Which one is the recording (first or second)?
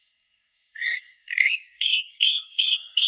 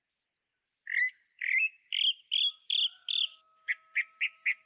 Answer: second